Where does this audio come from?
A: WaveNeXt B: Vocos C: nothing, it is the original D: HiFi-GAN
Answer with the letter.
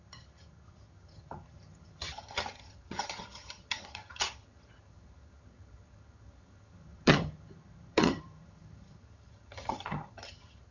D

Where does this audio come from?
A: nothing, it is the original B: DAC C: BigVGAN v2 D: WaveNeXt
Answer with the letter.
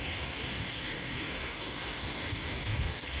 B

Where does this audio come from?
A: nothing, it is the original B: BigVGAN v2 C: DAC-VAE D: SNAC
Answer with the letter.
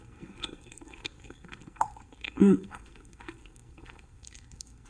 D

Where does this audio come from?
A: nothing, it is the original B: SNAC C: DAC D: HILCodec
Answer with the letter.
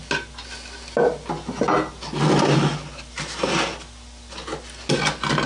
A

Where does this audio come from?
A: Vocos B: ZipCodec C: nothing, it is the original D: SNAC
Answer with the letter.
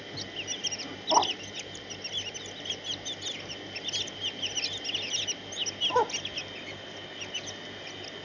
C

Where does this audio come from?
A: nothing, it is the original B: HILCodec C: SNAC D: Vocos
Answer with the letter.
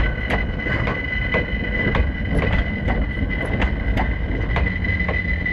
A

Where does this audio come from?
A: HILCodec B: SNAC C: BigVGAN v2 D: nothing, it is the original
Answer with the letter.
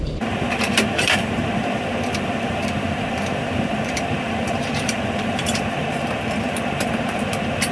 C